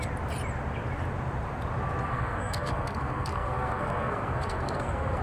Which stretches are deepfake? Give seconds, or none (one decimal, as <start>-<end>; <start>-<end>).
2.0-5.2